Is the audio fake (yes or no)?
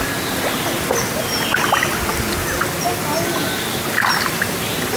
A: yes